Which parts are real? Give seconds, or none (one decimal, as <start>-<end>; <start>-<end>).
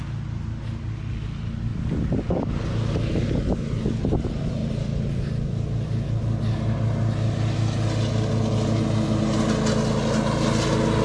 0.0-1.7; 2.6-4.6; 6.2-11.0